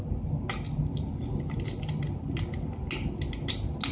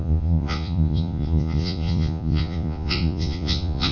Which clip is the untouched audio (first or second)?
first